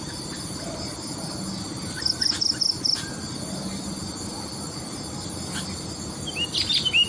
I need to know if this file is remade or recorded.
recorded